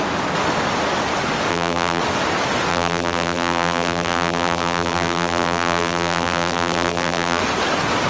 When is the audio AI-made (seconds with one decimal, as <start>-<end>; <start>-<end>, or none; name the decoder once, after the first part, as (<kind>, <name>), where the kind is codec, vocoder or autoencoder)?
1.5-2.0 (vocoder, BigVGAN v2); 2.7-7.4